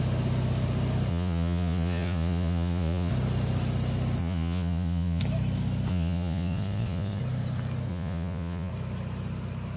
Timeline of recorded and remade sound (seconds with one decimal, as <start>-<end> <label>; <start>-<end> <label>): 0.0-1.1 recorded; 1.1-3.1 remade; 3.1-4.2 recorded; 4.2-5.2 remade; 5.2-5.9 recorded; 5.9-7.2 remade; 7.2-7.9 recorded; 7.9-8.7 remade; 8.7-9.8 recorded